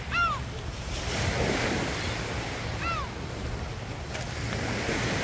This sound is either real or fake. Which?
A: real